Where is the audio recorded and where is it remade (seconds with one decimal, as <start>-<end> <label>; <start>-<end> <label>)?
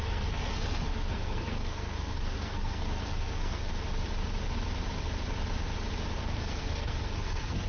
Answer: 0.0-3.7 remade; 3.7-6.2 recorded; 6.2-7.7 remade